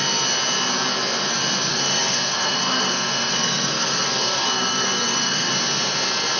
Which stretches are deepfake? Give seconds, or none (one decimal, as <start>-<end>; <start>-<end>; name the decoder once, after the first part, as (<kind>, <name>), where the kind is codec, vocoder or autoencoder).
1.7-5.5 (codec, SNAC)